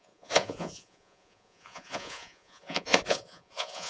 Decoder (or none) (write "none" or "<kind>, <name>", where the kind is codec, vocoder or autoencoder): vocoder, Vocos